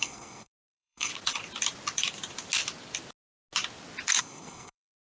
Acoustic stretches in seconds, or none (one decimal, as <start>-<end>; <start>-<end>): 1.1-4.2